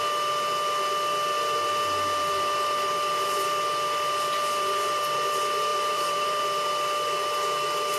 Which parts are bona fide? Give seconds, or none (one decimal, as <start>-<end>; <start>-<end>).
0.0-5.7; 6.4-8.0